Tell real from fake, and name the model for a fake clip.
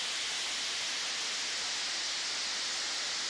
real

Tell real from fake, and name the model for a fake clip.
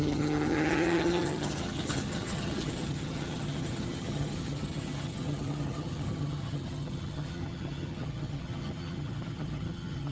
fake, vocoder, HiFi-GAN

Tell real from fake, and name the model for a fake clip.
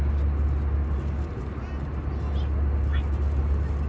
real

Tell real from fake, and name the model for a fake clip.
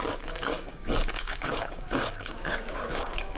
fake, codec, DAC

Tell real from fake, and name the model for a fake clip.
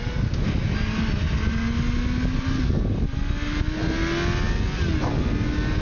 real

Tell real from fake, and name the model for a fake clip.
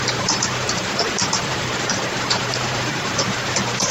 fake, vocoder, BigVGAN v2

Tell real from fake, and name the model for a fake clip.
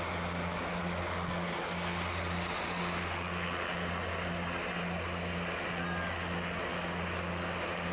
real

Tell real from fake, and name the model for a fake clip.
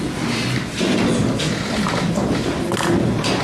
real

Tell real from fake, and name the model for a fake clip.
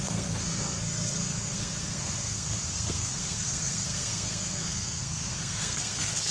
fake, codec, SNAC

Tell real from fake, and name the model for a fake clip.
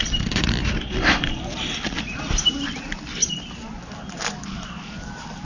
real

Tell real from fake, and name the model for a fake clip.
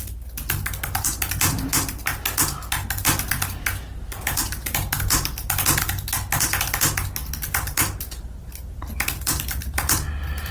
real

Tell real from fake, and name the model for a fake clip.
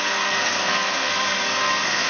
fake, codec, SNAC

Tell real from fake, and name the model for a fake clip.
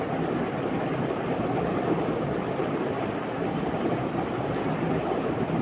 fake, vocoder, BigVGAN v2